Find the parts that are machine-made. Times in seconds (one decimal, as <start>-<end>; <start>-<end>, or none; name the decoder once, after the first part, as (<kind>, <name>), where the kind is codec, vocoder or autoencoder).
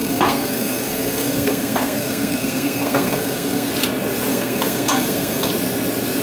0.0-3.7 (codec, SNAC); 4.3-5.5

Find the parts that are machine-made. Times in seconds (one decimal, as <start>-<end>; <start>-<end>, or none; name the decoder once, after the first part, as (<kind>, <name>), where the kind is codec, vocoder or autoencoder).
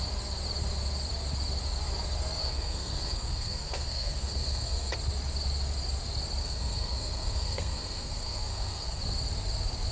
2.4-4.9 (codec, SNAC); 6.4-9.0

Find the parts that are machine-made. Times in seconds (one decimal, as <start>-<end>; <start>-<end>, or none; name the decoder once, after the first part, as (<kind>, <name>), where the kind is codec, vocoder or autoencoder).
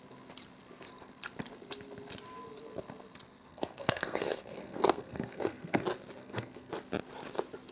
3.5-5.8 (codec, SNAC); 6.2-6.7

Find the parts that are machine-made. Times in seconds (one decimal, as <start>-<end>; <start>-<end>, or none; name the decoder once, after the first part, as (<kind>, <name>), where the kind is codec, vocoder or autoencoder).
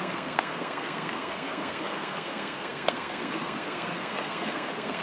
0.0-5.0 (codec, SNAC)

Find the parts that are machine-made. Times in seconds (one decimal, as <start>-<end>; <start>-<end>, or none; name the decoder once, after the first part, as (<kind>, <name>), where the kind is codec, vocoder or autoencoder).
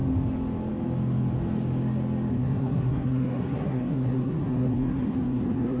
2.3-5.8 (codec, SNAC)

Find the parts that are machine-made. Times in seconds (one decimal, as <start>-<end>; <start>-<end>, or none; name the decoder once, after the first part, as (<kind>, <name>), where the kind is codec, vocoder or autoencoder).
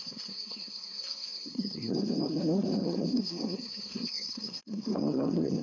0.0-5.6 (codec, SNAC)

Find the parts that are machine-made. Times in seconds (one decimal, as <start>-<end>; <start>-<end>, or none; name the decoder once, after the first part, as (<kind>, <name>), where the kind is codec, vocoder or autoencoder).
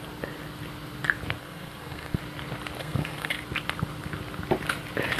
1.4-2.2 (codec, SNAC); 2.8-3.3